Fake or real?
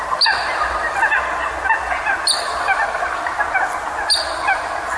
real